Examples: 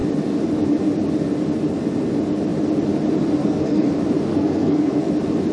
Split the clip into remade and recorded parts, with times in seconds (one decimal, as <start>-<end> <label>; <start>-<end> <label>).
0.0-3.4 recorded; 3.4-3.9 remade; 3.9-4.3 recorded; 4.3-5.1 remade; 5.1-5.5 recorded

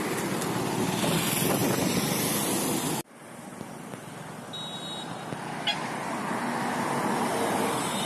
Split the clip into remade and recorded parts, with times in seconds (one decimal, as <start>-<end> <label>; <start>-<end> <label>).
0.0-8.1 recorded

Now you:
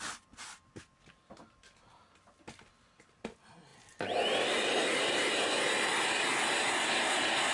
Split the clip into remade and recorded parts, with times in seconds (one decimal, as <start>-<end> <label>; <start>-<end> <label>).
0.0-7.5 recorded